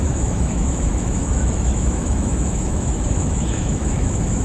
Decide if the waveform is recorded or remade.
remade